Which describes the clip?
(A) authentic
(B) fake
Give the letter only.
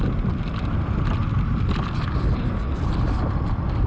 A